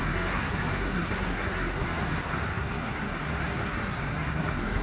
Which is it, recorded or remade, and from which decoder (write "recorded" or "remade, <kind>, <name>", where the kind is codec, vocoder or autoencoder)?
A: remade, codec, SNAC